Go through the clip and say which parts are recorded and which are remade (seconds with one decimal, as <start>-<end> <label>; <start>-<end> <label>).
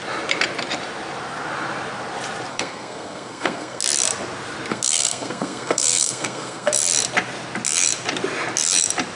0.0-2.5 recorded; 2.5-3.8 remade; 3.8-4.7 recorded; 4.7-6.7 remade; 6.7-9.2 recorded